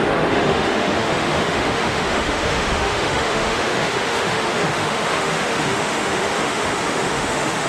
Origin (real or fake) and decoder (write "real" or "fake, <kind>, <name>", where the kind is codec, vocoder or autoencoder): fake, autoencoder, DAC-VAE